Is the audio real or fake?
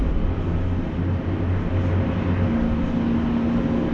real